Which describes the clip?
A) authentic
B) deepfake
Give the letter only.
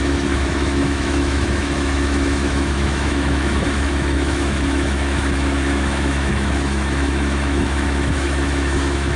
B